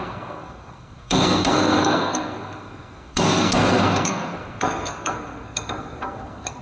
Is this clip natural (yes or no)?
no